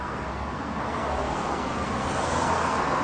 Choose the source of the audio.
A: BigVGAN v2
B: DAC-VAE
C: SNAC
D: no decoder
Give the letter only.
C